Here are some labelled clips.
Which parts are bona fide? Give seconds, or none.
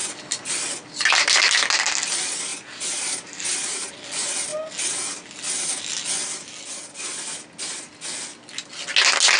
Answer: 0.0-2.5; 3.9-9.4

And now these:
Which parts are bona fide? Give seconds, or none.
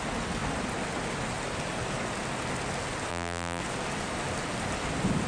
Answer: 0.0-3.1; 3.6-5.3